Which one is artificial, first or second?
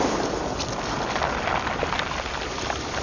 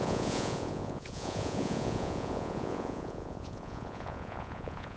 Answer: second